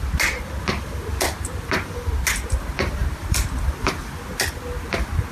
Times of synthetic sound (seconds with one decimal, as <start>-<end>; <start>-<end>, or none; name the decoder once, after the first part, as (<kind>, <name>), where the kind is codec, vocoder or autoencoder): 3.2-4.3 (vocoder, BigVGAN v2)